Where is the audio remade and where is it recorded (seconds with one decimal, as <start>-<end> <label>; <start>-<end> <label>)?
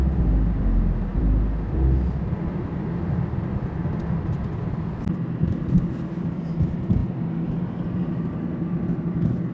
0.0-9.5 recorded